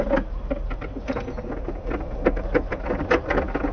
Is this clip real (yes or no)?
yes